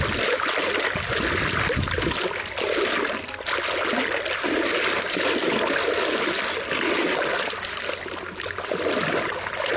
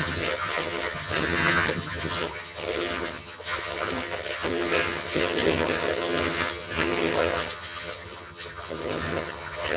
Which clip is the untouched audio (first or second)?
first